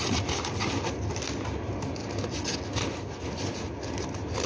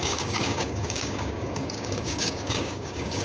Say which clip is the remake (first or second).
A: second